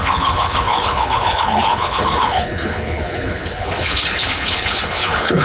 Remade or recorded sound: remade